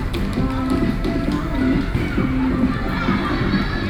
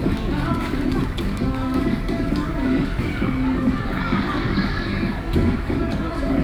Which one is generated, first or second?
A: second